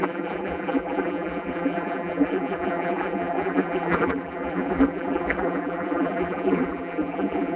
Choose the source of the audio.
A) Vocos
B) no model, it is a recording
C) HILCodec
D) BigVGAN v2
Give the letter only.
D